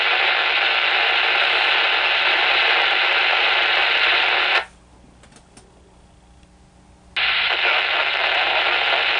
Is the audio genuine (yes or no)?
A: yes